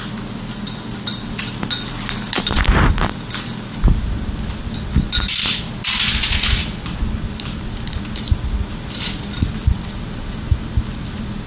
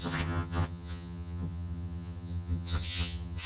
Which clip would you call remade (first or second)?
second